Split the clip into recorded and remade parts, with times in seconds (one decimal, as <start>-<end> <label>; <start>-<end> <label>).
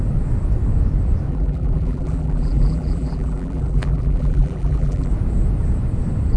0.0-1.3 recorded; 1.3-5.1 remade; 5.1-6.4 recorded